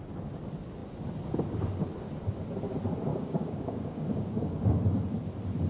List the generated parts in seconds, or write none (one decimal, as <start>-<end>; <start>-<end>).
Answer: 3.1-4.8